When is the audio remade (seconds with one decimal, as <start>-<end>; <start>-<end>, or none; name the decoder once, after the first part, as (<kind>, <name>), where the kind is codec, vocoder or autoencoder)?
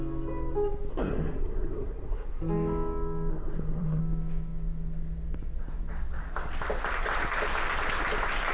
0.9-2.4 (codec, SNAC); 3.3-4.0